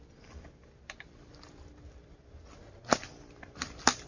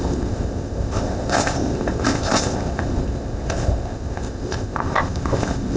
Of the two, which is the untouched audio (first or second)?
first